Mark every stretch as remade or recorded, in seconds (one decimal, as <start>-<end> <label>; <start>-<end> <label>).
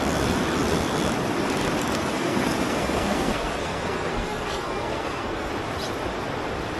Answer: 0.0-1.8 recorded; 1.8-5.5 remade; 5.5-6.8 recorded